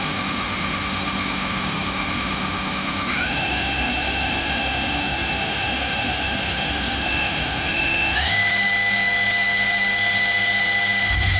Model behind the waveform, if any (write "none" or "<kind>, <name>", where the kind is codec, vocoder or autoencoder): autoencoder, DAC-VAE